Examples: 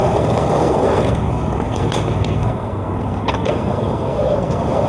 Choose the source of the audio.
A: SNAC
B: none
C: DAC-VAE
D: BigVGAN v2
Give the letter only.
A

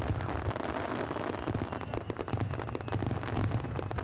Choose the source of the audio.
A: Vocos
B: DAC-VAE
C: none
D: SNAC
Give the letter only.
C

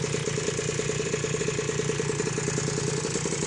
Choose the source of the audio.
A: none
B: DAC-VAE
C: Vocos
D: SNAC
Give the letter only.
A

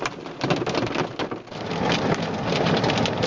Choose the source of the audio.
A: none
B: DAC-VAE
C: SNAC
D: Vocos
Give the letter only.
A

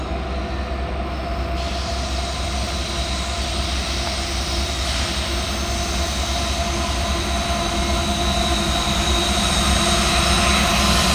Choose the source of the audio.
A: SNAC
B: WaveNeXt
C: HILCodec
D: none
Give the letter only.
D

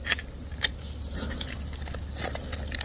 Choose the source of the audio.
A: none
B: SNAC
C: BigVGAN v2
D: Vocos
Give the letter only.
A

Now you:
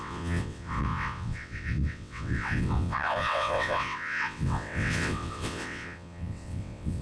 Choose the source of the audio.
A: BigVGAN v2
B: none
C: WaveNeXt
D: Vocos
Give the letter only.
C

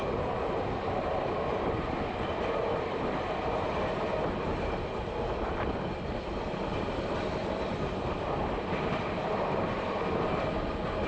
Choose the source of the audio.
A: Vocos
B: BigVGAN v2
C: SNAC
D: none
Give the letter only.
D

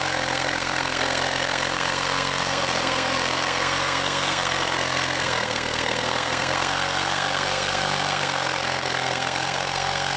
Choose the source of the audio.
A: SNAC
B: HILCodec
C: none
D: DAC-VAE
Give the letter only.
A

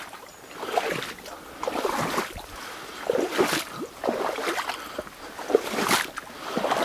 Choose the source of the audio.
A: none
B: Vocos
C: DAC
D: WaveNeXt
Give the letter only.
A